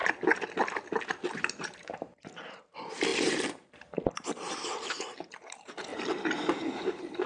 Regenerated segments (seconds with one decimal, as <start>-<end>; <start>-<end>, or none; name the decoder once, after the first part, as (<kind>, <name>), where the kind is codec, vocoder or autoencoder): 1.0-5.9 (vocoder, BigVGAN v2); 6.5-7.3